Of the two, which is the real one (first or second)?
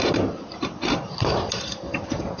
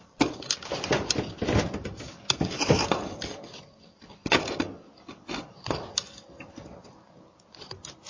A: second